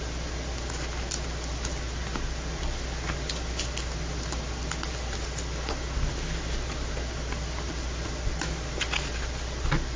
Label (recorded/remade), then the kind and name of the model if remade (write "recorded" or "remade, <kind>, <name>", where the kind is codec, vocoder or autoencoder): recorded